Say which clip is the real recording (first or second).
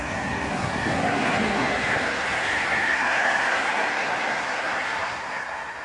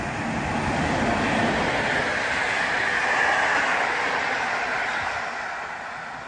second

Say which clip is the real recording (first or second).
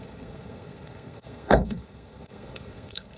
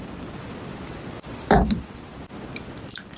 second